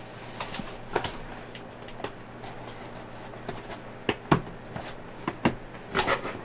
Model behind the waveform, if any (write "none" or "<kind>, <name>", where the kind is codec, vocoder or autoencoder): none